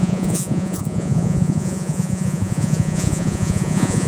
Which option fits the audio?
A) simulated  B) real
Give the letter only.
A